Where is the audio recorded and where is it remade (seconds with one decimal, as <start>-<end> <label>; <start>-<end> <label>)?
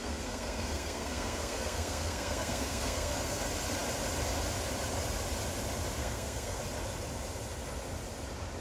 0.0-3.4 remade; 3.4-6.0 recorded; 6.0-6.6 remade; 6.6-8.6 recorded